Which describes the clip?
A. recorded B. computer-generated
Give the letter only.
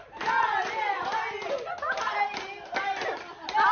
A